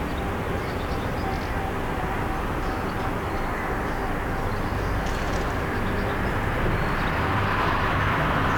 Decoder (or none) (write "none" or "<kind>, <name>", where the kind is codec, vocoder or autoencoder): none